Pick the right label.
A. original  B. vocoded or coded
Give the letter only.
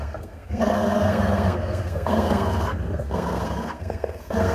B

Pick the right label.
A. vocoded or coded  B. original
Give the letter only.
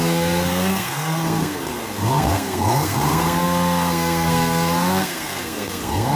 A